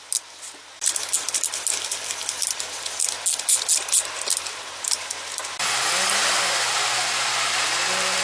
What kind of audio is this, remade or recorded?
recorded